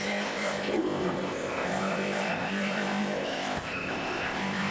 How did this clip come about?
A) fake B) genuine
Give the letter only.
A